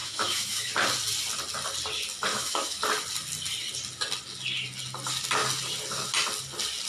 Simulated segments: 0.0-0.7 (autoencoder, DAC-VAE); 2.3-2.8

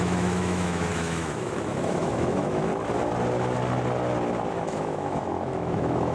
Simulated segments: 0.0-2.7 (autoencoder, DAC-VAE); 4.5-6.1

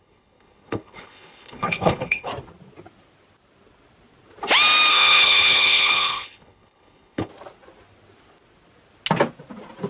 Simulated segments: 0.0-2.3 (codec, HILCodec); 4.9-7.3

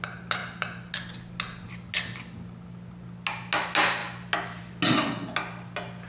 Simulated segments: none

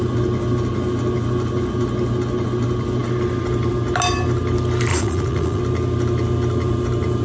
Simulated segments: 4.9-5.6 (vocoder, Vocos)